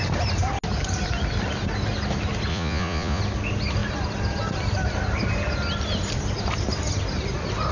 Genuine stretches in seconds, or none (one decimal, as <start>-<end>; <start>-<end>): 0.0-2.5; 3.2-7.7